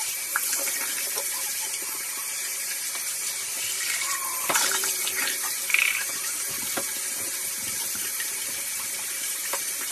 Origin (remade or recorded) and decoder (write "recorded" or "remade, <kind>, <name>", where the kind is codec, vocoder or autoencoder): remade, vocoder, BigVGAN v2